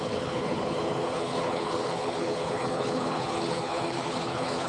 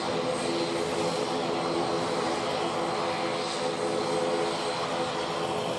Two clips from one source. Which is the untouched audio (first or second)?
second